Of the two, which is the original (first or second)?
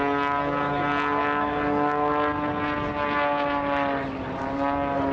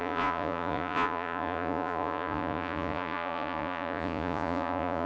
first